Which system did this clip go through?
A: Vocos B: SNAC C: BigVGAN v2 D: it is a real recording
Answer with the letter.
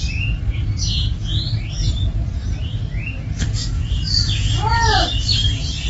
D